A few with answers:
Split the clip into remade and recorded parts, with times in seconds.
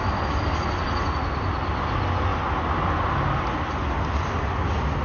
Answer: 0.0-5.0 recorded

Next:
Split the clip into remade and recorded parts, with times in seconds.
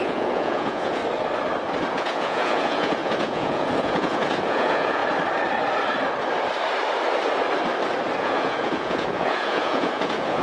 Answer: 0.0-1.0 remade; 1.0-1.9 recorded; 1.9-5.0 remade; 5.0-8.2 recorded; 8.2-10.4 remade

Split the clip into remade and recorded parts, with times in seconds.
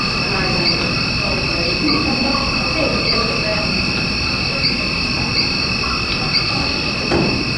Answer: 0.0-7.6 recorded